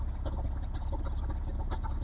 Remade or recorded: recorded